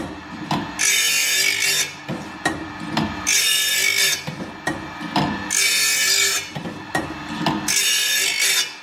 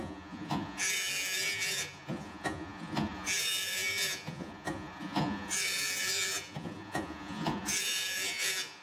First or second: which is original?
first